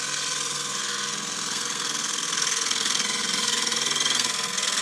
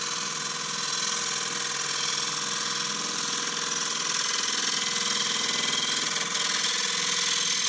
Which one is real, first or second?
second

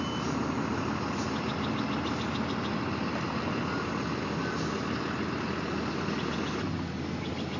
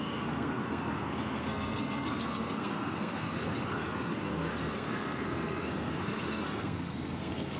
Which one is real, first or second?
first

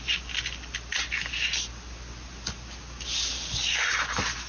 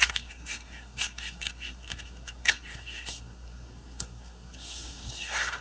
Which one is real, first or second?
first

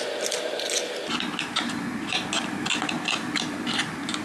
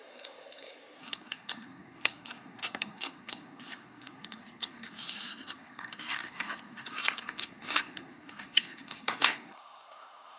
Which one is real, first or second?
first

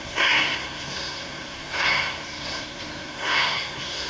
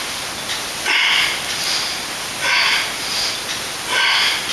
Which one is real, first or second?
second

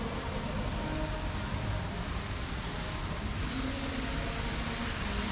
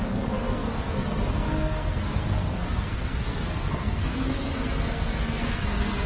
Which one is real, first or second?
first